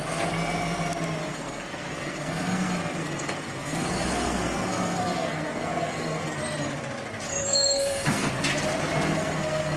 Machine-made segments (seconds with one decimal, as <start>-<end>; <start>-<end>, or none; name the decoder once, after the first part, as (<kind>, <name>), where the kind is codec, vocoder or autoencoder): 1.2-6.4 (codec, SNAC); 7.3-8.3; 9.1-9.8